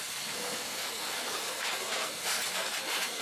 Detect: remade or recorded remade